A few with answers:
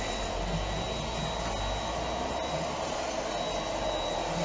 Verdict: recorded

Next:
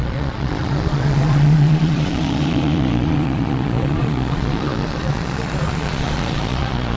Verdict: remade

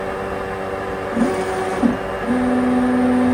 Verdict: recorded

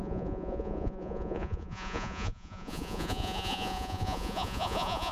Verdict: remade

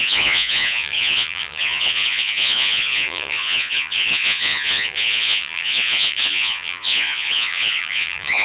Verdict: remade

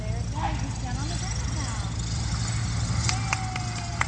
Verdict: recorded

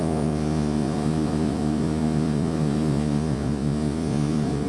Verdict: remade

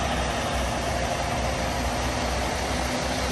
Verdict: recorded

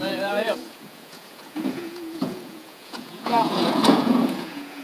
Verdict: remade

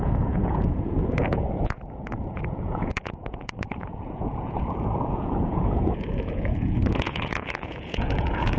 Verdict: remade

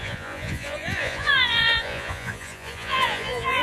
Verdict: remade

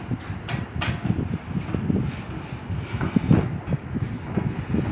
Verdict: recorded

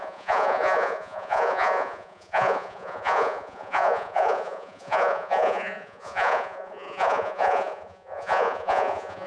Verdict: remade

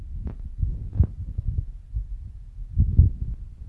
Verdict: recorded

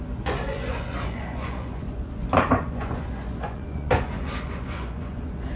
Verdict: remade